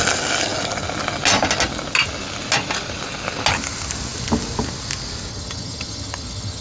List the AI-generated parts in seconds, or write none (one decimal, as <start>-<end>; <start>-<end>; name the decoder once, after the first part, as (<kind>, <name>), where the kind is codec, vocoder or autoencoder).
5.3-6.6 (vocoder, HiFi-GAN)